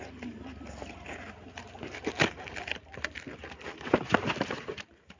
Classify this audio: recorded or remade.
recorded